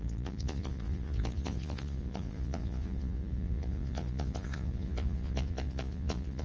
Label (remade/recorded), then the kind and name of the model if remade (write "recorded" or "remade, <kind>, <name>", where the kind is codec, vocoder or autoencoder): remade, vocoder, Vocos